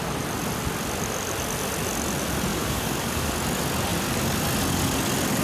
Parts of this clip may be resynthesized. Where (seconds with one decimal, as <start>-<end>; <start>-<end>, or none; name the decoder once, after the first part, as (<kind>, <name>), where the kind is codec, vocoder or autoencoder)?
2.5-3.3 (codec, DAC)